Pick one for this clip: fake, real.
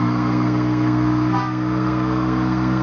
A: fake